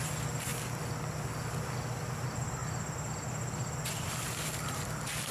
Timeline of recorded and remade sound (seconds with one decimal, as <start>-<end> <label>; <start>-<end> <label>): 0.0-5.3 recorded